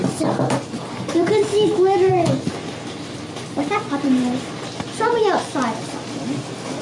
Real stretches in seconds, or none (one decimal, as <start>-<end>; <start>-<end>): 0.0-1.5; 2.1-6.8